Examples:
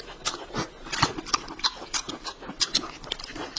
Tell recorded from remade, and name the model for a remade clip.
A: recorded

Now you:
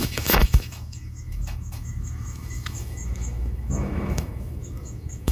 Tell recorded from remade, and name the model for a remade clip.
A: remade, autoencoder, DAC-VAE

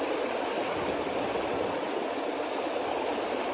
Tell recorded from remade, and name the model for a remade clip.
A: recorded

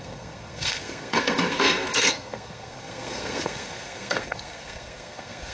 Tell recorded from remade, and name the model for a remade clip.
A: remade, codec, SNAC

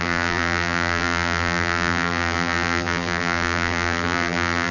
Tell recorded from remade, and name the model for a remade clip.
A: remade, vocoder, BigVGAN v2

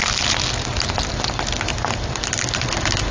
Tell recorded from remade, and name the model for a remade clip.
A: recorded